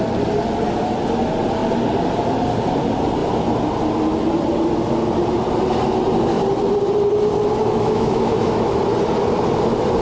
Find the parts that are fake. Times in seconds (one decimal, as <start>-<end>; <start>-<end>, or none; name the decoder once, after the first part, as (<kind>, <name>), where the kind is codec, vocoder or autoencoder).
7.6-8.8 (autoencoder, DAC-VAE)